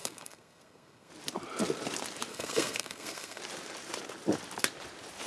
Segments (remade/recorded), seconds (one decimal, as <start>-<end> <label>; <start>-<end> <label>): 0.0-1.1 remade; 1.1-2.3 recorded; 2.3-3.4 remade; 3.4-5.3 recorded